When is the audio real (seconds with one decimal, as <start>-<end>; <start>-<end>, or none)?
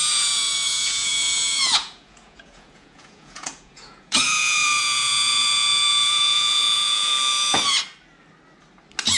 7.1-9.2